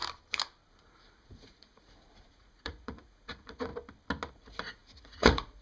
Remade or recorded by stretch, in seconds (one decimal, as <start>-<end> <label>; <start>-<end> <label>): 0.0-0.7 recorded; 0.7-3.7 remade; 3.7-4.3 recorded; 4.3-5.6 remade